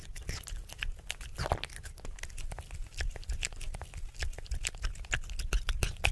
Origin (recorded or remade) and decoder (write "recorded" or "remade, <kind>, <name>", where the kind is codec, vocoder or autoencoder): recorded